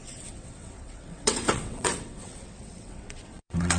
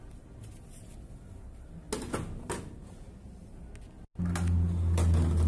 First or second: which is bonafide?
second